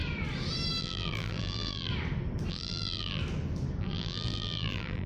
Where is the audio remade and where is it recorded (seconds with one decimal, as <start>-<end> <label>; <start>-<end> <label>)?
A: 0.0-0.8 recorded; 0.8-1.9 remade; 1.9-2.5 recorded; 2.5-3.2 remade; 3.2-3.8 recorded; 3.8-5.1 remade